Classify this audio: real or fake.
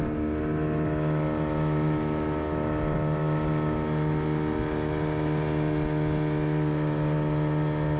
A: real